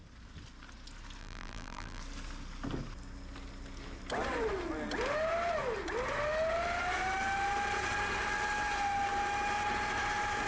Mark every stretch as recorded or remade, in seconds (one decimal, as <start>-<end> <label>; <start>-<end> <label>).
0.0-1.2 recorded; 1.2-2.0 remade; 2.0-10.5 recorded